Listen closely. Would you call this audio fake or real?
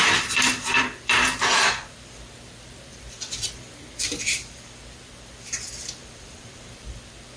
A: fake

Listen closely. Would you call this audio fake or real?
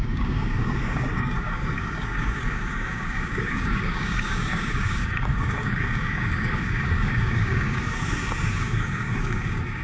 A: fake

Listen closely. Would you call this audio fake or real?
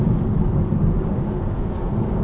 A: fake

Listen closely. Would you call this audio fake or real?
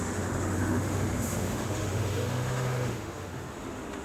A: fake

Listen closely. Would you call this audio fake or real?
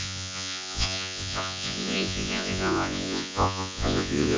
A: fake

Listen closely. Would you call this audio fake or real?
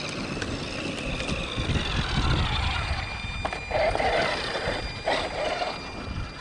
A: real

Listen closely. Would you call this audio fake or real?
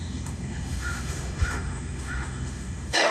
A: fake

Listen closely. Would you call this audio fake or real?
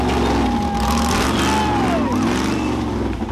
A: real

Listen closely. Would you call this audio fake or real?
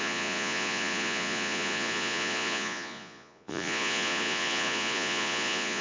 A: fake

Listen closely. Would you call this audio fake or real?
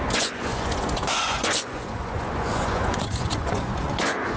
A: fake